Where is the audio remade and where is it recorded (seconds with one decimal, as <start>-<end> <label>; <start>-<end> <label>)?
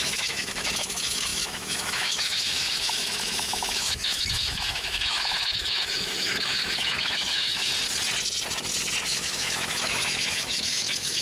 0.0-7.7 remade; 7.7-9.1 recorded; 9.1-11.2 remade